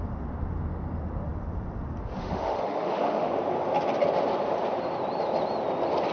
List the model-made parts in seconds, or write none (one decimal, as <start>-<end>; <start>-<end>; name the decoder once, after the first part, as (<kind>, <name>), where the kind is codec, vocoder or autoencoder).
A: 2.2-3.3 (autoencoder, DAC-VAE)